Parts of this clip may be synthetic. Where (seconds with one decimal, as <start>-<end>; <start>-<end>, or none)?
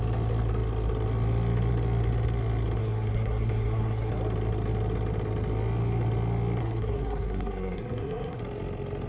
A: 2.8-4.1; 6.6-8.4